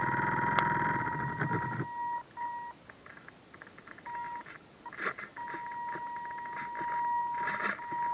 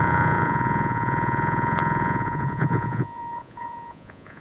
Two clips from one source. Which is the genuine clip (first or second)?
first